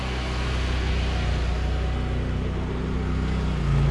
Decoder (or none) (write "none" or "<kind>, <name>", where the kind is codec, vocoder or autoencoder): none